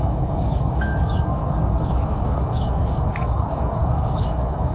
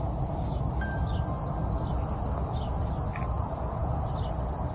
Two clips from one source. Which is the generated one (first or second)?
first